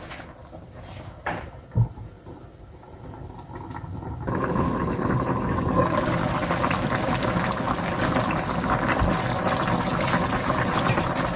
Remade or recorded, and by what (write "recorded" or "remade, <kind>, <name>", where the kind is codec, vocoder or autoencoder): recorded